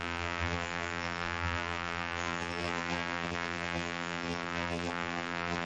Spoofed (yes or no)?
yes